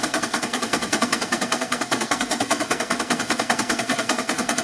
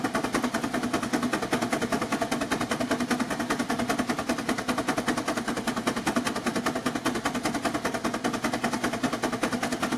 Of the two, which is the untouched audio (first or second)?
second